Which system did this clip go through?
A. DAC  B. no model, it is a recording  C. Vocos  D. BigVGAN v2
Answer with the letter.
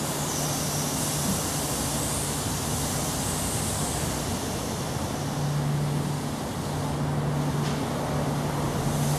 B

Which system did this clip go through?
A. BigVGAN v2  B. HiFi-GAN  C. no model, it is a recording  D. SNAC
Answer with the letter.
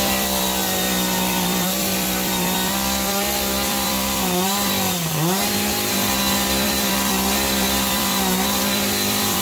A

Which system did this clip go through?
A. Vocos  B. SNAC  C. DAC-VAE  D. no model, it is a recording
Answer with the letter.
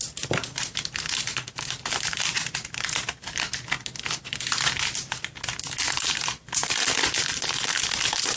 D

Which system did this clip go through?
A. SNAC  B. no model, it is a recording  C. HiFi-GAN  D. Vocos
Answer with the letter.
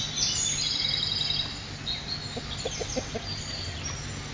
B